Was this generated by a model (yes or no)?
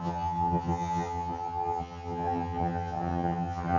yes